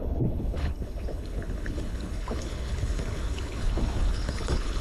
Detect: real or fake fake